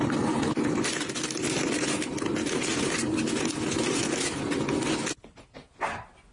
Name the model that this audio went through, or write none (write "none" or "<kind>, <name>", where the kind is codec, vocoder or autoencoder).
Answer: none